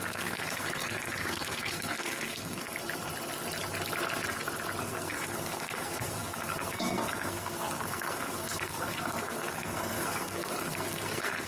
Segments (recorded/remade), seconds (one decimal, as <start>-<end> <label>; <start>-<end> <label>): 0.0-2.7 remade; 2.7-4.8 recorded; 4.8-11.5 remade